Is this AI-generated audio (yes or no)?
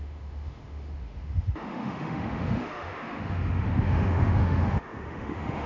yes